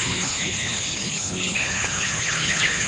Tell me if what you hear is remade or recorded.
remade